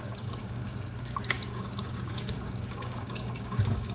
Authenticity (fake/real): fake